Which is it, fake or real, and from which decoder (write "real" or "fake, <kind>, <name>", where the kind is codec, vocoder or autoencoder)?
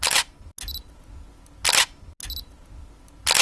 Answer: real